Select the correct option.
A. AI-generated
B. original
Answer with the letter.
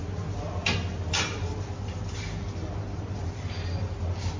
B